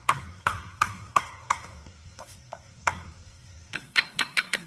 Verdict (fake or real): fake